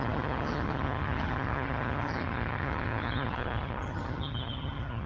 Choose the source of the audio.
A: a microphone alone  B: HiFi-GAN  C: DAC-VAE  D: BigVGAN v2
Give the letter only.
B